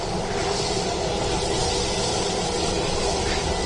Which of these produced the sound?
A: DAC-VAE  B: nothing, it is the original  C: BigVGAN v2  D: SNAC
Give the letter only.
B